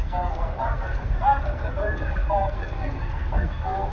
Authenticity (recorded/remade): remade